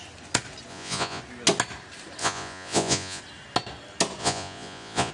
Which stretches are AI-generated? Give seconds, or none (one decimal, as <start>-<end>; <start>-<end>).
0.7-1.2; 2.2-3.2; 4.2-5.1